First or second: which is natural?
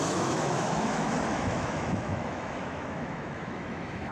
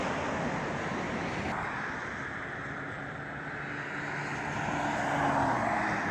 second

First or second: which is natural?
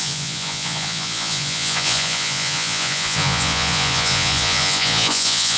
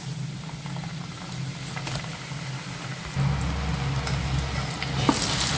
second